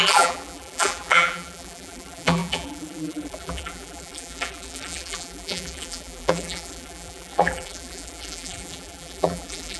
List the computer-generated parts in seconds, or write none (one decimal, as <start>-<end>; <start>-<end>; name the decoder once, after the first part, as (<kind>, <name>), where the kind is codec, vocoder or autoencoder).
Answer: 0.0-9.8 (vocoder, BigVGAN v2)